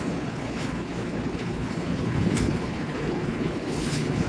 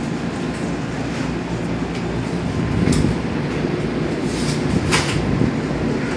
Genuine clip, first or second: second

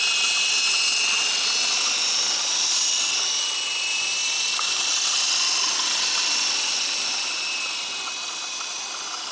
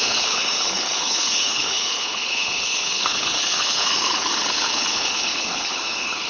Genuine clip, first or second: first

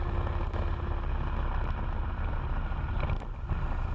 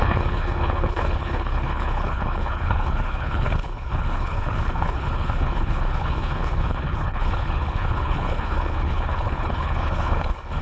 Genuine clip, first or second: first